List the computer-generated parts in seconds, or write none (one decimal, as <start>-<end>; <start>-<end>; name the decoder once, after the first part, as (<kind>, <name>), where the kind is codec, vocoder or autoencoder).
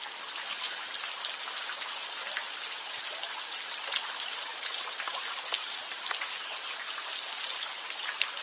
0.0-2.4 (vocoder, BigVGAN v2); 2.9-8.4